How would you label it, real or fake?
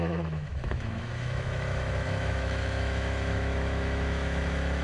fake